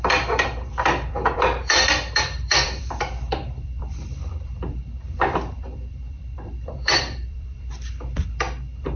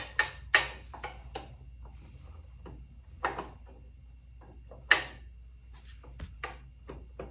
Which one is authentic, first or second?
second